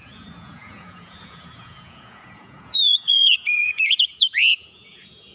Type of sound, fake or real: fake